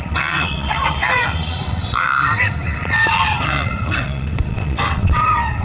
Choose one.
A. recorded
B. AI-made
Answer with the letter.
B